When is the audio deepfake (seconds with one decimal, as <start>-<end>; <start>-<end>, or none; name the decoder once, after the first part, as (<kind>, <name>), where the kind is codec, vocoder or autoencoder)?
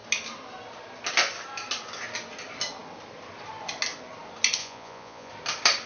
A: 4.6-5.3 (vocoder, Vocos)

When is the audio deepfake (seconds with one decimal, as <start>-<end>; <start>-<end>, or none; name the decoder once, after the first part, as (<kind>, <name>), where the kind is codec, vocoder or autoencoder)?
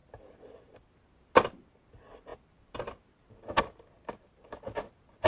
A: none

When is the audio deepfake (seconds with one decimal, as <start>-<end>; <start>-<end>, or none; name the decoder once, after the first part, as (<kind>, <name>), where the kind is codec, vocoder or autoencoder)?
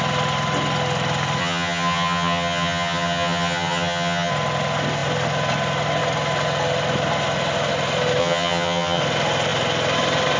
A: 1.4-4.3 (vocoder, HiFi-GAN); 8.2-9.0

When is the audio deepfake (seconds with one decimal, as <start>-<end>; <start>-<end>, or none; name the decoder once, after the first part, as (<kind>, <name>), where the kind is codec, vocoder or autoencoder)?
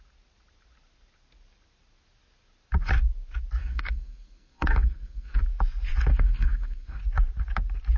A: 3.6-5.4 (codec, SNAC); 6.1-7.0